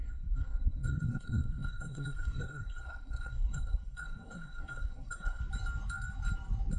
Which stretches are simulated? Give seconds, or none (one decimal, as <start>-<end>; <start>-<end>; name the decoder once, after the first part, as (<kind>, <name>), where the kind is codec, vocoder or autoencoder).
0.0-5.4 (codec, SNAC)